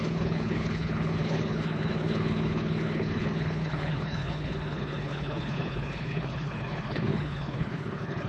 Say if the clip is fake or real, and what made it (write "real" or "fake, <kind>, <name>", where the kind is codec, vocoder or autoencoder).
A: fake, codec, HILCodec